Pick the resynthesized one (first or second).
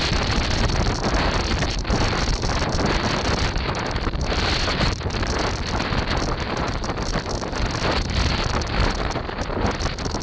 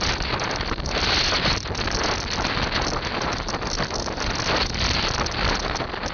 first